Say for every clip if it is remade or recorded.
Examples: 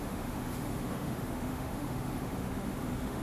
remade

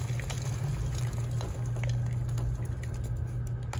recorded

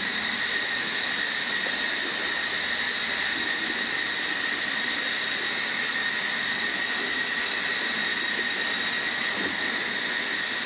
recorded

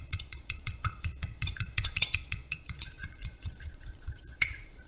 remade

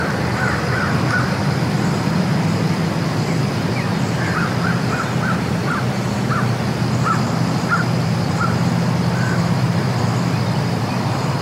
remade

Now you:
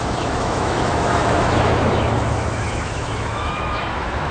remade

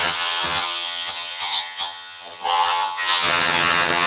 remade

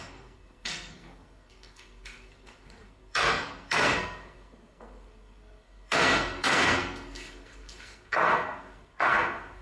remade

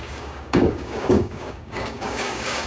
remade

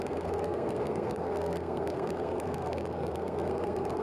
remade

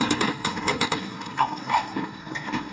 remade